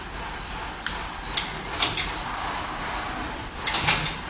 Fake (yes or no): no